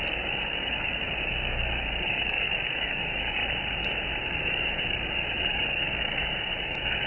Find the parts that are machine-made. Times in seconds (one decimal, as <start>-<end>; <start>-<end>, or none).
0.0-3.4; 4.2-7.1